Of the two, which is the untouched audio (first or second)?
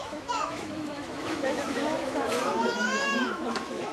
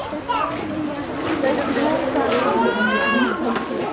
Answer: second